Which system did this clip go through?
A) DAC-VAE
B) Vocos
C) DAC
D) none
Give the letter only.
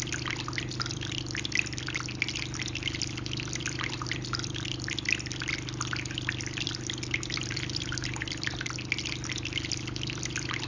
D